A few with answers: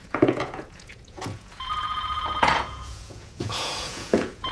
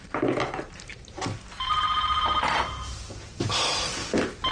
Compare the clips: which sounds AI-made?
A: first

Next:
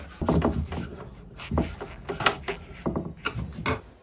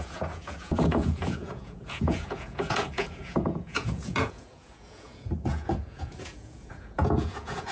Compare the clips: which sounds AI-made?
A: second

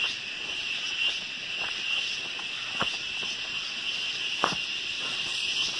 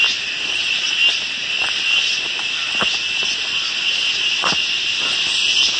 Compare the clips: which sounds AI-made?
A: first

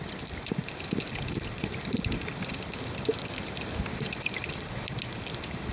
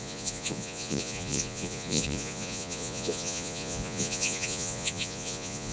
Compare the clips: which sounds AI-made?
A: second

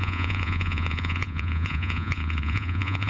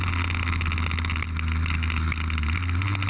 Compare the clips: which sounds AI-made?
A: first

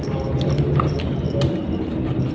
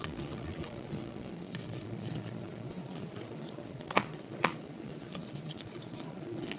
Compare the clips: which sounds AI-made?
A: second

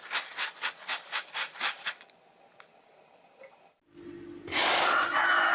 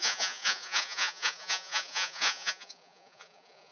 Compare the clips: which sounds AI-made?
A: second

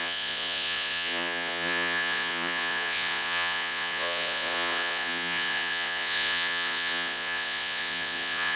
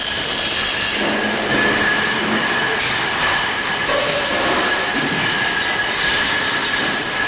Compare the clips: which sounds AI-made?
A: first